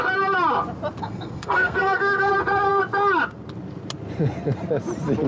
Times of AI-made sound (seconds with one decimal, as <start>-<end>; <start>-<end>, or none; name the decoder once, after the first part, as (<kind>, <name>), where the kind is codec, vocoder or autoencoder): 1.0-2.3 (codec, SNAC)